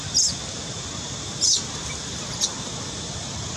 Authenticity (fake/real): real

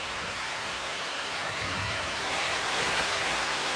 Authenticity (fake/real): fake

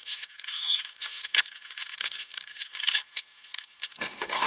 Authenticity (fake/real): fake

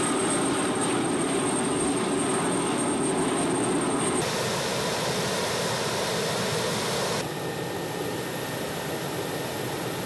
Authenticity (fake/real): real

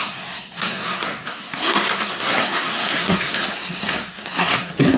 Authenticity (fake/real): fake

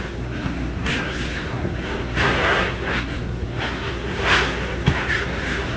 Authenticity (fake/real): fake